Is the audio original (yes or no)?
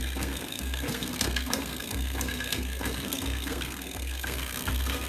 no